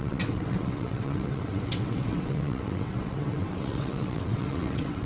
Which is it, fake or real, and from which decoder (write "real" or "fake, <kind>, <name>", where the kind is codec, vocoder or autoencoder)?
fake, vocoder, WaveNeXt